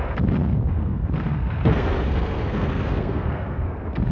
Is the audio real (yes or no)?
no